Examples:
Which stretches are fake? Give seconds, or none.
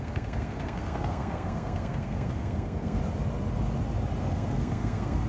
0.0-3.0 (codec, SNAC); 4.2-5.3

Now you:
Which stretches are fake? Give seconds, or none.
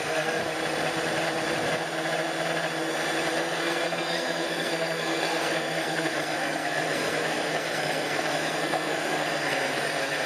0.0-0.4 (codec, SNAC); 3.3-10.3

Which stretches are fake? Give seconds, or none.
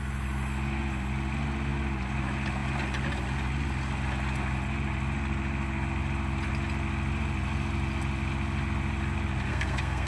9.5-10.1 (codec, SNAC)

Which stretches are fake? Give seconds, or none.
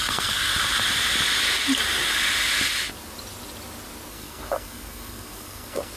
0.0-0.5 (codec, SNAC); 4.1-6.0